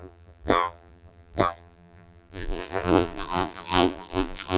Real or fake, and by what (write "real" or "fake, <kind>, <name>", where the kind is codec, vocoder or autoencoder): fake, vocoder, BigVGAN v2